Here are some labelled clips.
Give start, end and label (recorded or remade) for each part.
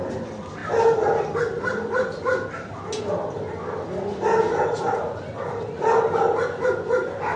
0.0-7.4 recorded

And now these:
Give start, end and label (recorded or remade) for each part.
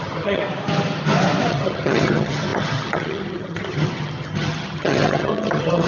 0.0-0.4 remade; 0.4-1.5 recorded; 1.5-5.9 remade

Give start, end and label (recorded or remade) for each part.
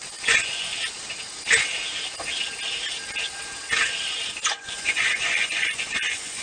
0.0-0.7 remade; 0.7-4.5 recorded; 4.5-6.4 remade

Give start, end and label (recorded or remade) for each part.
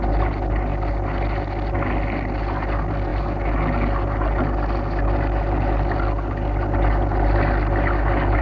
0.0-8.4 recorded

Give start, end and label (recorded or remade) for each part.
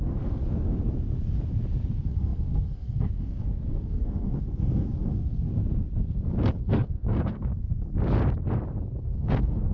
0.0-0.4 remade; 0.4-1.9 recorded; 1.9-5.5 remade; 5.5-6.6 recorded; 6.6-7.5 remade; 7.5-9.0 recorded; 9.0-9.7 remade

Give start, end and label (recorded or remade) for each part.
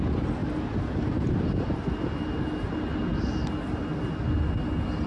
0.0-5.1 recorded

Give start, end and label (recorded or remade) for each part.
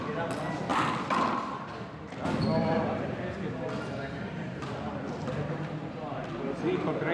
0.0-2.6 recorded; 2.6-5.4 remade; 5.4-7.1 recorded